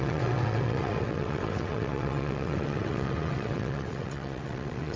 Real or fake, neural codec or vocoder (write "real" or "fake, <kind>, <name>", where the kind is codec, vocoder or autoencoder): fake, vocoder, WaveNeXt